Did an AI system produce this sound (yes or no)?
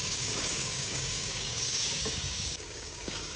yes